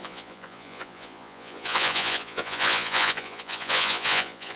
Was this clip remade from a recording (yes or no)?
yes